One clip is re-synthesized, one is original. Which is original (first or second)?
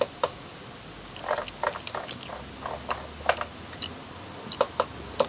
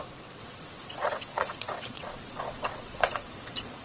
first